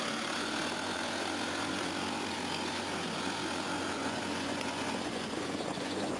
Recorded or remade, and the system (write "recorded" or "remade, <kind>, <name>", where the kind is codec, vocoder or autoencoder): remade, vocoder, Vocos